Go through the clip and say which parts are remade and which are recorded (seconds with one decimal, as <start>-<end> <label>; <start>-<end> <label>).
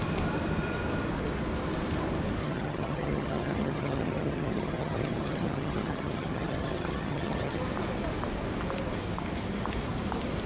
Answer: 0.0-2.4 recorded; 2.4-7.6 remade; 7.6-10.5 recorded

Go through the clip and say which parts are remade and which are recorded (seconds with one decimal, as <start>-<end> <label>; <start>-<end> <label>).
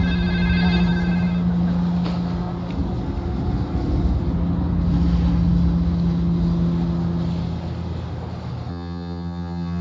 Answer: 0.0-8.7 recorded; 8.7-9.8 remade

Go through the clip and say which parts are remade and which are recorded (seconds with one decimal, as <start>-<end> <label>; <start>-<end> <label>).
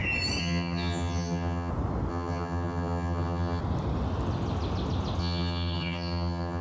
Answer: 0.0-0.4 recorded; 0.4-1.7 remade; 1.7-2.1 recorded; 2.1-3.6 remade; 3.6-5.2 recorded; 5.2-6.6 remade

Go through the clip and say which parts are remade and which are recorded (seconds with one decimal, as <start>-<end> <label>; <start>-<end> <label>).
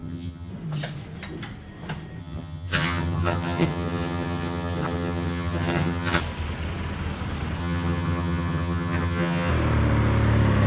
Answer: 0.0-0.5 remade; 0.5-2.2 recorded; 2.2-6.2 remade; 6.2-7.6 recorded; 7.6-9.5 remade; 9.5-10.7 recorded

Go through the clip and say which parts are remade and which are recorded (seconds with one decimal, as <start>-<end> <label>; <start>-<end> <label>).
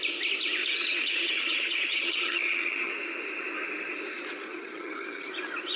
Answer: 0.0-0.6 recorded; 0.6-2.9 remade; 2.9-4.5 recorded; 4.5-5.3 remade; 5.3-5.8 recorded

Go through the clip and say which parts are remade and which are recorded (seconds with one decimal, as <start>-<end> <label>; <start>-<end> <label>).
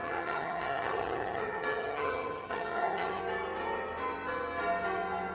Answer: 0.0-3.2 remade; 3.2-5.3 recorded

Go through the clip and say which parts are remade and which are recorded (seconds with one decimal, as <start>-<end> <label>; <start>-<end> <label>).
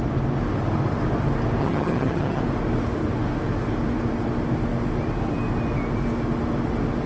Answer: 0.0-1.6 recorded; 1.6-2.4 remade; 2.4-7.1 recorded